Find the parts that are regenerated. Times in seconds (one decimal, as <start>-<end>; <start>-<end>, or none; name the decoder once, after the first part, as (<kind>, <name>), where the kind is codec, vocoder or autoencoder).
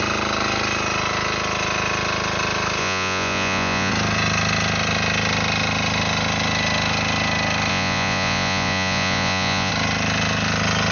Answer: 2.8-3.9 (vocoder, Vocos); 7.7-9.7